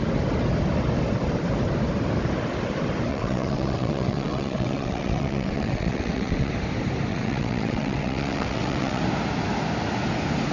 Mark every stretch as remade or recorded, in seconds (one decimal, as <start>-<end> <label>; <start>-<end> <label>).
0.0-3.1 recorded; 3.1-6.5 remade; 6.5-7.1 recorded; 7.1-9.0 remade; 9.0-10.5 recorded